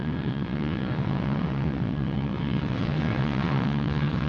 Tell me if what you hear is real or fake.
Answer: fake